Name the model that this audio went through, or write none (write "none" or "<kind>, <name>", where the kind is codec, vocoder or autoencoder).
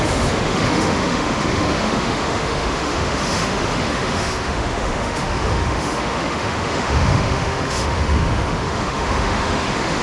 autoencoder, DAC-VAE